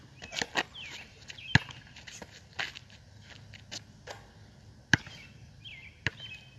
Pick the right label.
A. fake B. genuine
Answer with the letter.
B